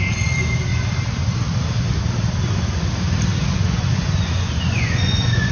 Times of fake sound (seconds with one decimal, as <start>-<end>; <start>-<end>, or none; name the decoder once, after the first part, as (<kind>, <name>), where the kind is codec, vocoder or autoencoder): 3.5-5.5 (vocoder, Vocos)